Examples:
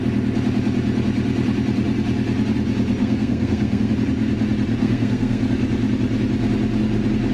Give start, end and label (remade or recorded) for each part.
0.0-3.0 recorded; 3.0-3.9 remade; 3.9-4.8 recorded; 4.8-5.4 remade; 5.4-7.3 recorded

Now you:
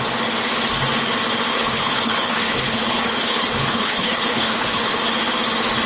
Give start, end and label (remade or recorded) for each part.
0.0-1.5 recorded; 1.5-5.0 remade; 5.0-5.9 recorded